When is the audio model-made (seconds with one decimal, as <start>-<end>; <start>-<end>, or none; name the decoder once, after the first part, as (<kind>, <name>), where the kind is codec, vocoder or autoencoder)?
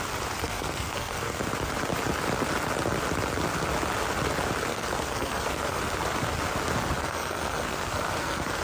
0.4-1.4 (codec, SNAC); 4.7-5.8; 7.0-8.6